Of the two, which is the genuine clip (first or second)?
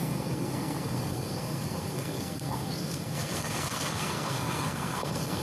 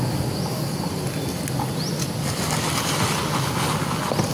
second